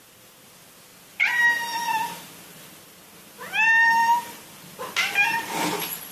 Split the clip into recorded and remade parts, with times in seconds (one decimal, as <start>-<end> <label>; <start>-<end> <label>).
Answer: 0.0-0.9 recorded; 0.9-2.8 remade; 2.8-4.0 recorded; 4.0-4.6 remade; 4.6-6.1 recorded